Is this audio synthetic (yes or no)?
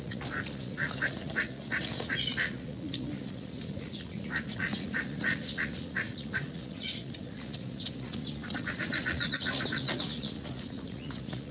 yes